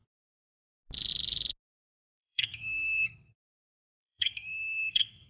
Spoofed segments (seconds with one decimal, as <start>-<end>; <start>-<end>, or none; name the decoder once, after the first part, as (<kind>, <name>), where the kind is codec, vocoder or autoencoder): 1.9-5.3 (codec, SNAC)